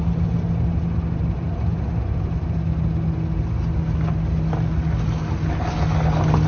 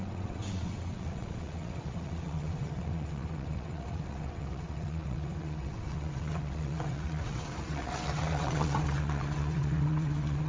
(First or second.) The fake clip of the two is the second